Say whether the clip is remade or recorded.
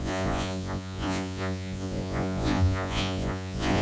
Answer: remade